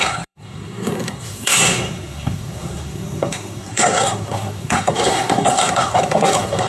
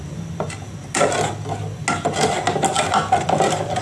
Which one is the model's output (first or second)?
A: first